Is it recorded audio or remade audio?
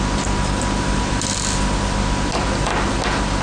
recorded